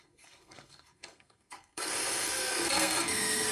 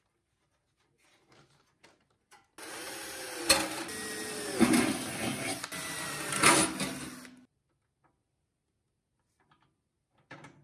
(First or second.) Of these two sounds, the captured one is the second